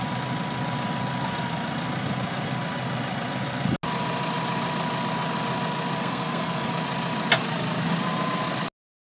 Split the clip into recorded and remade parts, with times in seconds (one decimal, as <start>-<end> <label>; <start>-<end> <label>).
0.0-6.0 recorded; 6.0-6.7 remade; 6.7-9.2 recorded